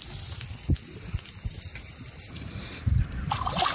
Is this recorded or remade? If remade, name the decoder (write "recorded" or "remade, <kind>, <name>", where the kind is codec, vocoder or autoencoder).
remade, vocoder, BigVGAN v2